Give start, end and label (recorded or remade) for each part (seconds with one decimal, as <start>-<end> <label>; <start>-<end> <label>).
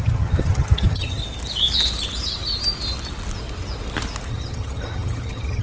0.0-1.2 remade; 1.2-4.3 recorded; 4.3-5.6 remade